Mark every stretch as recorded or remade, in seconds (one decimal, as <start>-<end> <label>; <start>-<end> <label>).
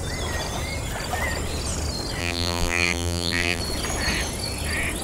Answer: 0.0-2.2 recorded; 2.2-3.6 remade; 3.6-5.0 recorded